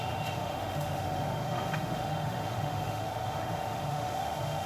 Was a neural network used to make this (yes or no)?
yes